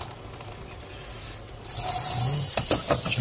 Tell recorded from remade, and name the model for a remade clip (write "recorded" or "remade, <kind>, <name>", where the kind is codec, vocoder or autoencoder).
recorded